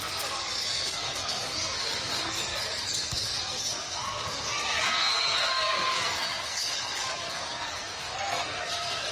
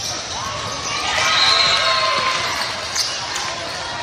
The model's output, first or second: first